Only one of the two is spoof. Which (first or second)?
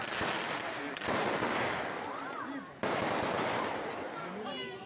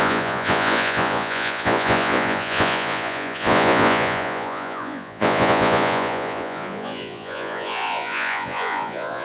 second